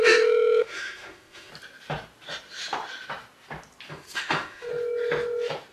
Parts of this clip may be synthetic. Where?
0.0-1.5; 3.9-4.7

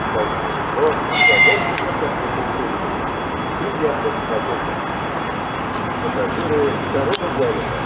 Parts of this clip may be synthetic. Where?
1.3-1.9

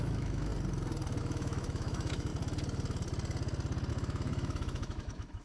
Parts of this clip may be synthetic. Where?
0.0-0.5; 1.2-2.3; 3.9-5.4

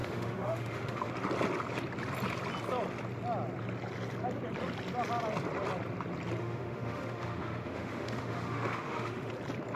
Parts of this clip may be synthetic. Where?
0.0-1.1; 6.4-9.3

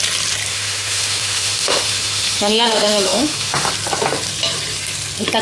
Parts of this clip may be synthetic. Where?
0.5-3.7

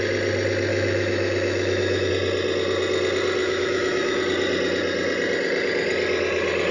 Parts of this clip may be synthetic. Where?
0.7-2.1; 3.4-4.2

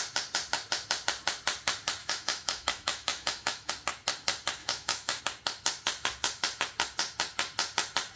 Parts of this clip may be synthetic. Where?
2.0-3.7; 4.6-5.2

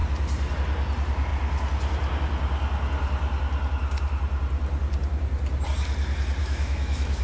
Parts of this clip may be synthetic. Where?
6.4-7.2